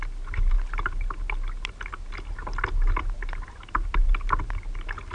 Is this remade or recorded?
recorded